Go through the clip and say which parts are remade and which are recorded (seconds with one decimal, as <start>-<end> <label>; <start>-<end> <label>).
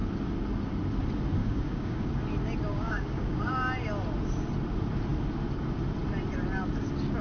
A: 0.0-1.4 recorded; 1.4-2.1 remade; 2.1-2.7 recorded; 2.7-3.5 remade; 3.5-7.2 recorded